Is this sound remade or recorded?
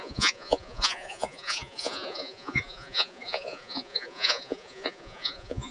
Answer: remade